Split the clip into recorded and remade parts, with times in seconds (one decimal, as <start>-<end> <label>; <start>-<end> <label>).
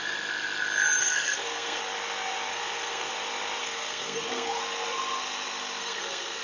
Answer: 0.0-1.0 recorded; 1.0-1.8 remade; 1.8-2.5 recorded; 2.5-3.1 remade; 3.1-3.6 recorded; 3.6-4.6 remade; 4.6-5.8 recorded; 5.8-6.4 remade